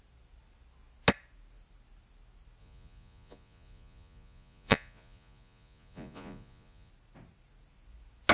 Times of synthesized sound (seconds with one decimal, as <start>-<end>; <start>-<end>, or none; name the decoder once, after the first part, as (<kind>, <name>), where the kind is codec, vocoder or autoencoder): 2.6-6.9 (vocoder, Vocos)